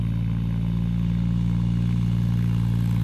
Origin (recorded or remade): recorded